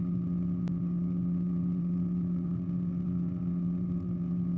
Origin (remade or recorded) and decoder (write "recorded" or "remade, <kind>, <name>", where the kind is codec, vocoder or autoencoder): recorded